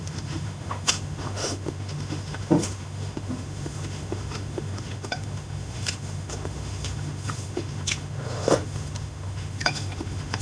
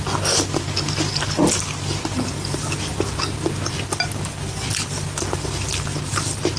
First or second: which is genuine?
second